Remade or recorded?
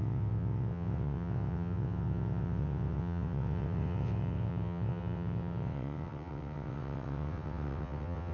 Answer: remade